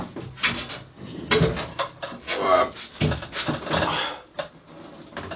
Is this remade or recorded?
recorded